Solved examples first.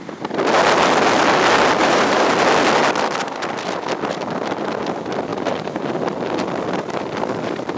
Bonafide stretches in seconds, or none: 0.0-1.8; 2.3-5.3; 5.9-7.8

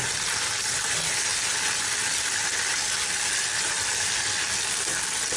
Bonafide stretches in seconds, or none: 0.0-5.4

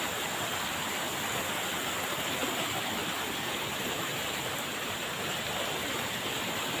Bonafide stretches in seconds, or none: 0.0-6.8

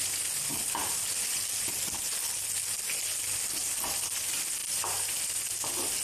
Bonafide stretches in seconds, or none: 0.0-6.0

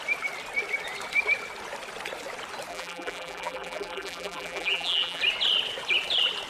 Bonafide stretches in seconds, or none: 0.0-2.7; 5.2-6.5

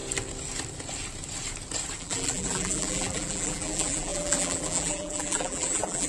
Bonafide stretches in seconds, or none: 0.0-2.0